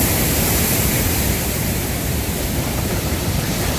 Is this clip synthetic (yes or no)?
yes